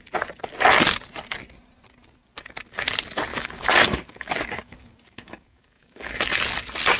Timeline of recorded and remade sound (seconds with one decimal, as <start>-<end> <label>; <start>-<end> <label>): 0.0-3.3 recorded; 3.3-6.2 remade; 6.2-7.0 recorded